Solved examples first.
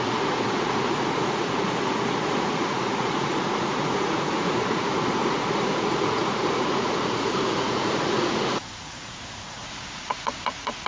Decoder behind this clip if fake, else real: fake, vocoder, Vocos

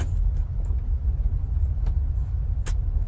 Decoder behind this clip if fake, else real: real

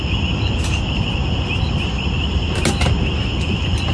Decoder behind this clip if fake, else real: real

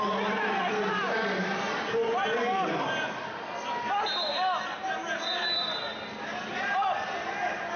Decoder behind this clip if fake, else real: real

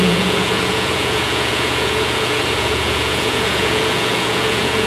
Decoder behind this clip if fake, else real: fake, vocoder, Vocos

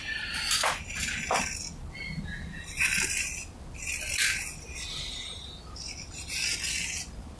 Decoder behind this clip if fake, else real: real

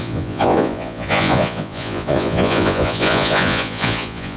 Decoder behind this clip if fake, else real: fake, vocoder, Vocos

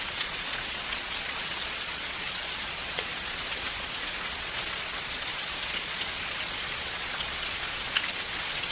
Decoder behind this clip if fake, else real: fake, vocoder, Vocos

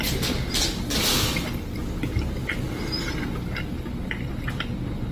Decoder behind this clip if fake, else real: real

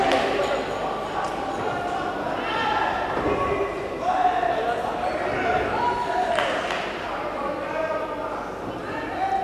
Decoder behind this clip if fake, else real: real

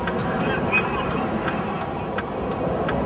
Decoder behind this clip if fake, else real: real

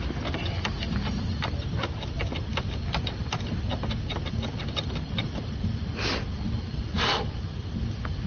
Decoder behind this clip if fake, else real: real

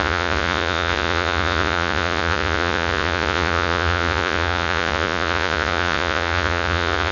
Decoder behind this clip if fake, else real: fake, vocoder, Vocos